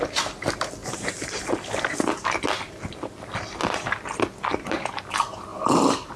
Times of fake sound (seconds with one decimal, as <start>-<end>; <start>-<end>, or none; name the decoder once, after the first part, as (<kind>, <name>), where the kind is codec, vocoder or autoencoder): none